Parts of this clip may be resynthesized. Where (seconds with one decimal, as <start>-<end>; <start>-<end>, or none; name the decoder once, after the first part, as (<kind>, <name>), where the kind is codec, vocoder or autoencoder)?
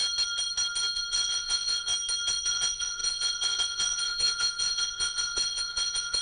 1.1-1.9 (vocoder, Vocos); 2.5-6.2